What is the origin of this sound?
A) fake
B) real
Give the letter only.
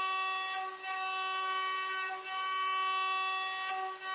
B